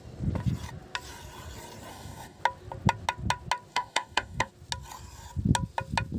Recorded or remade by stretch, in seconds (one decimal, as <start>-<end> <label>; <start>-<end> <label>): 0.0-1.9 recorded; 1.9-2.4 remade; 2.4-3.7 recorded; 3.7-4.5 remade; 4.5-6.2 recorded